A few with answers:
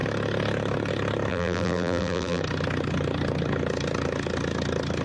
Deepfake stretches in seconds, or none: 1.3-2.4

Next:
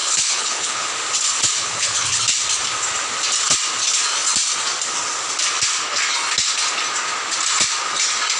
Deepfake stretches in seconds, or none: 0.0-0.9; 1.6-2.2

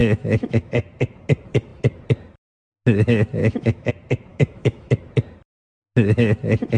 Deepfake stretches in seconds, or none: 0.0-0.7; 3.4-3.9; 4.3-4.9

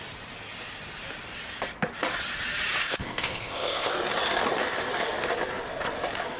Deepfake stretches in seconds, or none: 2.8-3.9

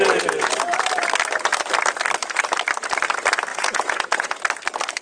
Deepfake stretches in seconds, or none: 3.5-4.4

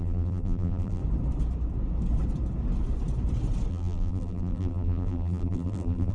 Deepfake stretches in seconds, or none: 0.0-1.0; 3.7-6.1